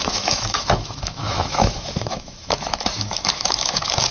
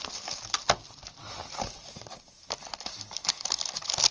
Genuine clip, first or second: second